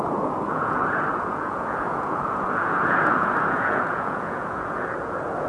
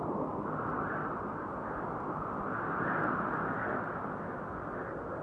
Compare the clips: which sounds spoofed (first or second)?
first